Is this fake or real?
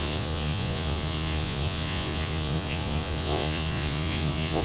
fake